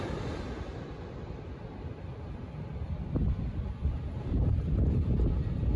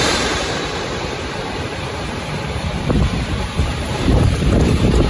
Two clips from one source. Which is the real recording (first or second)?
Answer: first